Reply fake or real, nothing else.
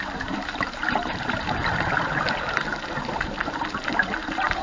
fake